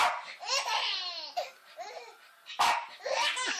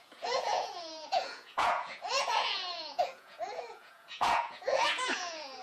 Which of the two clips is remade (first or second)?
second